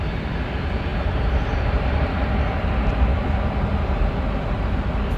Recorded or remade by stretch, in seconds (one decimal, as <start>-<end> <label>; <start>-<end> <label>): 0.0-0.9 recorded; 0.9-2.3 remade; 2.3-5.2 recorded